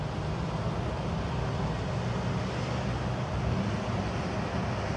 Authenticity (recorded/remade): recorded